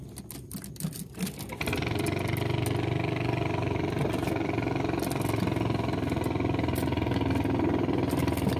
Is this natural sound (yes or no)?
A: yes